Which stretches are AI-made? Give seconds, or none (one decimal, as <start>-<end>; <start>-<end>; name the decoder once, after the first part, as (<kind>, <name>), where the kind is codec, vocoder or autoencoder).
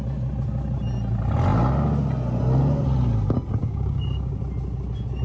3.6-4.4 (codec, DAC)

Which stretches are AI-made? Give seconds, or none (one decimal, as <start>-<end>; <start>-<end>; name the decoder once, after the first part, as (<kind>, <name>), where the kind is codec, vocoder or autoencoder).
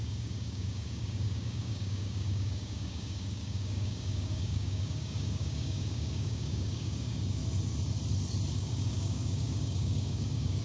0.0-7.4 (codec, DAC); 8.5-10.6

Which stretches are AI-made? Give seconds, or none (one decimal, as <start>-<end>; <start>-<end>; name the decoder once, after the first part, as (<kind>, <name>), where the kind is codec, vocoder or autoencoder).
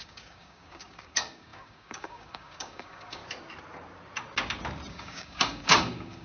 0.0-3.2 (codec, DAC); 4.9-6.2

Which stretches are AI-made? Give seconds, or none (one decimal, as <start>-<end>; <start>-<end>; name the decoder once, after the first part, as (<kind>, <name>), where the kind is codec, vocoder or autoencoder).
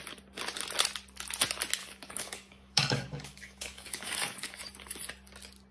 1.8-4.6 (codec, DAC)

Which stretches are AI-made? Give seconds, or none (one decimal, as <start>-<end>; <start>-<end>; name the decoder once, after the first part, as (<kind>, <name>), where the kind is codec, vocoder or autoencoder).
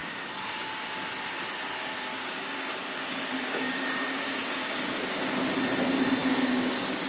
0.0-0.7 (codec, DAC); 2.1-5.1; 6.2-7.1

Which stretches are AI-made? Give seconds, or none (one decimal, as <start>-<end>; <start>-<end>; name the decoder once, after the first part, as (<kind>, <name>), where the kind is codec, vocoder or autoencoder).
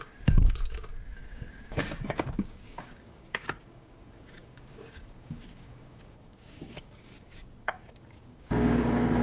0.0-9.2 (codec, DAC)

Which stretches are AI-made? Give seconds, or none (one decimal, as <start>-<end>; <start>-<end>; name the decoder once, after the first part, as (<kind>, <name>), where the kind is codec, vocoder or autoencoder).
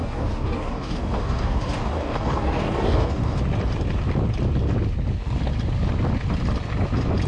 0.0-3.4 (codec, DAC)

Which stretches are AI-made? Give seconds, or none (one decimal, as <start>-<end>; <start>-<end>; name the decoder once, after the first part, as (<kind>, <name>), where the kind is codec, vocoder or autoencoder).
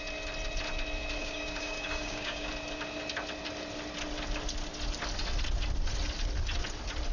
1.2-2.5 (codec, DAC)